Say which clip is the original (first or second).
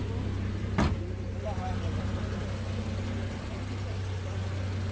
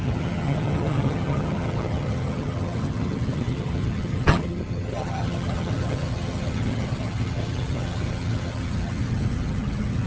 first